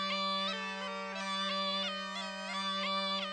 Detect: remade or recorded recorded